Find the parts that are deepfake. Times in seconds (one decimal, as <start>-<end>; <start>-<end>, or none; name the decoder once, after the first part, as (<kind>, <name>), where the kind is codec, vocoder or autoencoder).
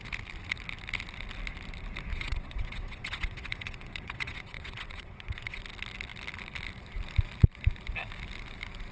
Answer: 2.1-5.6 (vocoder, WaveNeXt)